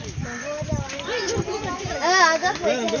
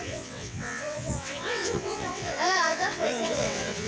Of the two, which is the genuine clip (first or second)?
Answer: first